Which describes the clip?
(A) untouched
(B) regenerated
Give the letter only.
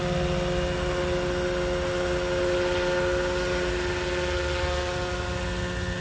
A